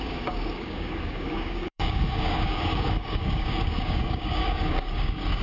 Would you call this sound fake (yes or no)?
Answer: yes